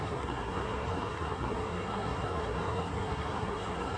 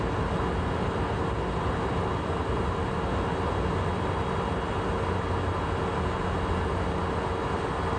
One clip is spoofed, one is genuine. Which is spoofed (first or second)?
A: first